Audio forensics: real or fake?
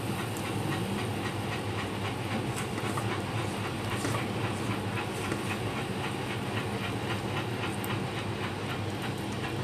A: real